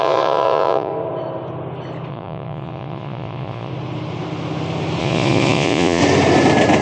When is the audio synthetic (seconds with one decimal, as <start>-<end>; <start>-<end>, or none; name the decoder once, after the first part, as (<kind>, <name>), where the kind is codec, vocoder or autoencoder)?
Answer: 0.0-0.9 (vocoder, Vocos); 2.1-3.7; 5.0-6.0